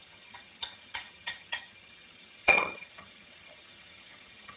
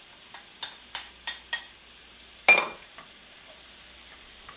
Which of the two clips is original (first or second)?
second